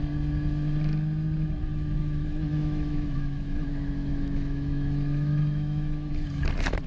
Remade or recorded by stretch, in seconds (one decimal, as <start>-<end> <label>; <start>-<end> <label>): 0.0-2.0 recorded; 2.0-6.1 remade; 6.1-6.9 recorded